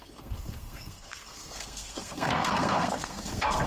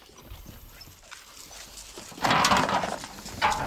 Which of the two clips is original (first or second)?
second